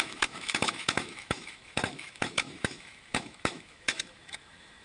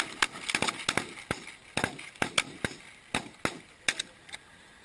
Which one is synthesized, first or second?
first